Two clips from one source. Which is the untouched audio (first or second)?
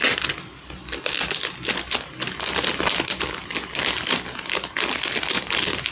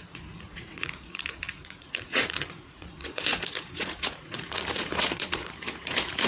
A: first